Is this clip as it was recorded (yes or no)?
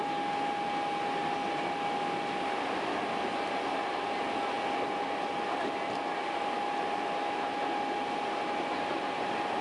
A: yes